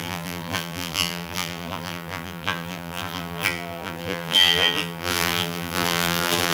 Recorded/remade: remade